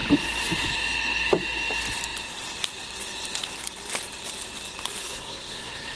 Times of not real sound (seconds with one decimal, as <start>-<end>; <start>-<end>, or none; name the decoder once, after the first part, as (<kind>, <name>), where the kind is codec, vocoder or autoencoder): 5.0-6.0 (codec, SNAC)